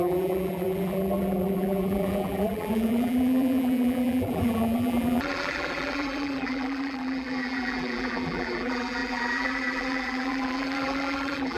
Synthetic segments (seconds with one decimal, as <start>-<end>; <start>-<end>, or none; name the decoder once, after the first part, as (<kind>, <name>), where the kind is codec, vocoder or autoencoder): 0.0-11.6 (vocoder, BigVGAN v2)